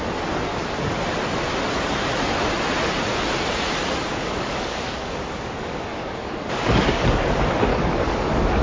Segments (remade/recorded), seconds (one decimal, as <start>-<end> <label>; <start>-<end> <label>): 0.0-0.5 recorded; 0.5-1.0 remade; 1.0-4.1 recorded; 4.1-7.3 remade; 7.3-7.7 recorded; 7.7-8.6 remade